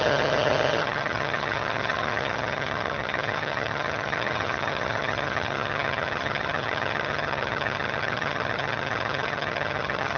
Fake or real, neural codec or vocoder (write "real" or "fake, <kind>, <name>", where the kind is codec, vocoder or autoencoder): fake, vocoder, HiFi-GAN